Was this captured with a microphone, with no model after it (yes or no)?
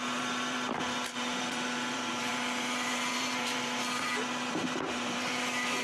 no